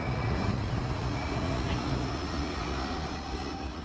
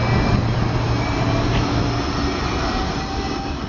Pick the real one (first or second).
second